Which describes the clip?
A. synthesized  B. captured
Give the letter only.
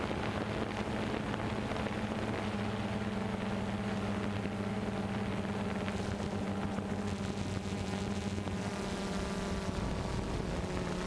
B